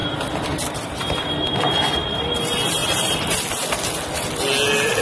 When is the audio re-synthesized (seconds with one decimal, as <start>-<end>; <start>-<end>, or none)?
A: none